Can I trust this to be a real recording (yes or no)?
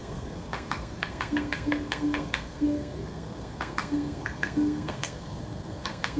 no